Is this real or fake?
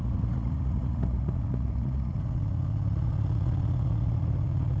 fake